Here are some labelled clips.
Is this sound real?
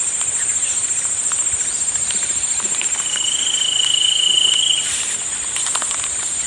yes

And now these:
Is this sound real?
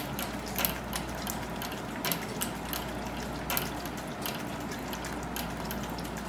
yes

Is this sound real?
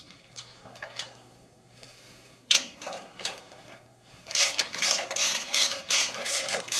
no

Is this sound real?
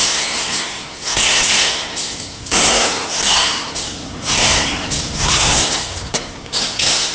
no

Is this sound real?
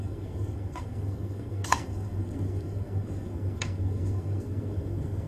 no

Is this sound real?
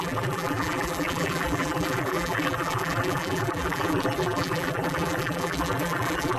no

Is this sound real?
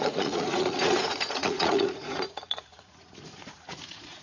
no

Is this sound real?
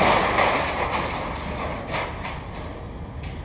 yes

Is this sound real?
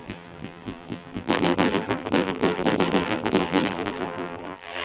no